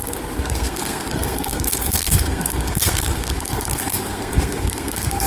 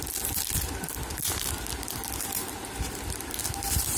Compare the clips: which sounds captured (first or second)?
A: second